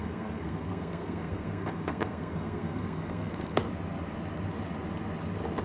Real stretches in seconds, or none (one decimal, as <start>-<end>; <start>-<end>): 3.6-5.6